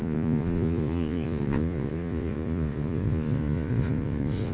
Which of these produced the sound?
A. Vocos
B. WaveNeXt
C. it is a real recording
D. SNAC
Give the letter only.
A